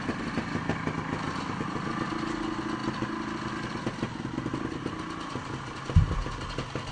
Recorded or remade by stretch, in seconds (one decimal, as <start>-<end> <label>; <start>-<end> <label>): 0.0-6.9 recorded